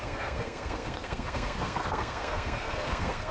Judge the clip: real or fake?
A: fake